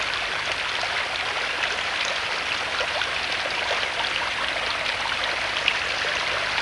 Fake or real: real